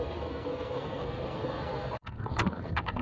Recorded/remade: remade